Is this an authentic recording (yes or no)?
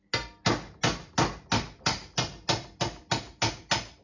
yes